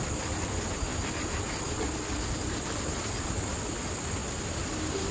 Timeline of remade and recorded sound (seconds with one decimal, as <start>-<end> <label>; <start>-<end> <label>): 0.0-5.1 recorded